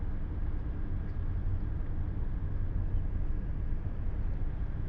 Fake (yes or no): no